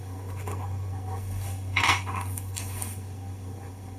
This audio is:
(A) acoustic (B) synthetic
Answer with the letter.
B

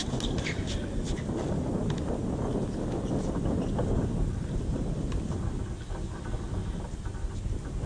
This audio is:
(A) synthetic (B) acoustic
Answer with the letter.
B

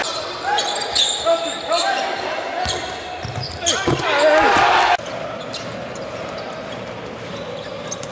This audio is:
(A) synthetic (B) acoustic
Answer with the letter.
B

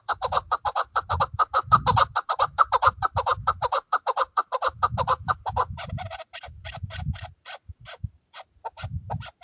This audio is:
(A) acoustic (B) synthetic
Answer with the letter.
B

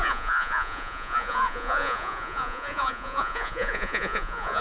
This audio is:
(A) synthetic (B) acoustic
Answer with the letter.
A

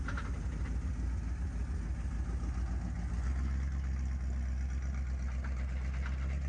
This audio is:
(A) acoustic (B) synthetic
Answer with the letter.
A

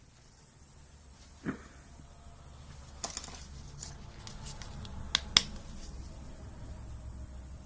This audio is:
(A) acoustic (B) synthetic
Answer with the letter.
A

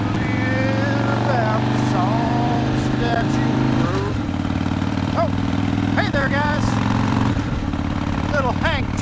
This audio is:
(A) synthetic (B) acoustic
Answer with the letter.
A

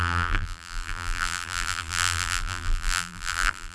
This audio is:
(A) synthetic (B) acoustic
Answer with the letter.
A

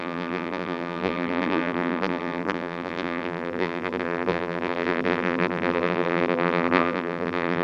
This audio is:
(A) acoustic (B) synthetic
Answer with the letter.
B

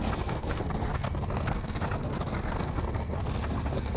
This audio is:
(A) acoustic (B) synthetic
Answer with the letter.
B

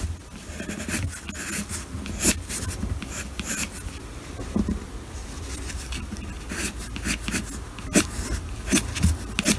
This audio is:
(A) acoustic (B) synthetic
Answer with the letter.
A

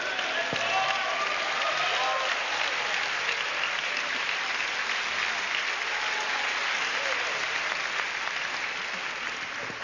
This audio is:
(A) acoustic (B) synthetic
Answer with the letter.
A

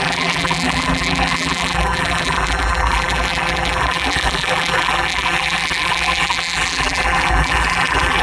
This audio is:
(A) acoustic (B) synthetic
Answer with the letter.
B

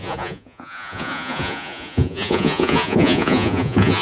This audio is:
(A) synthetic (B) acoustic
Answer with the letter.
A